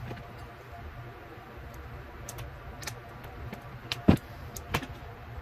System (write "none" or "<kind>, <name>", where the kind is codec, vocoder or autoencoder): vocoder, BigVGAN v2